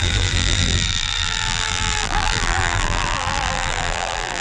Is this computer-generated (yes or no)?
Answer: yes